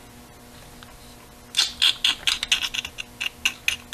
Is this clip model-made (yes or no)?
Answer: no